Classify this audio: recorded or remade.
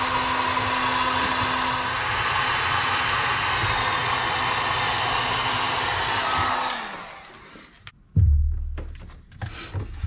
recorded